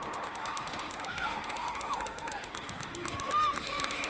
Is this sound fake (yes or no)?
yes